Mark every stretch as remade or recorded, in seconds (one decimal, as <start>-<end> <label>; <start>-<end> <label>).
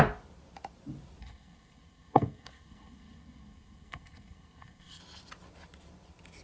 0.0-1.2 recorded; 1.2-5.0 remade; 5.0-6.4 recorded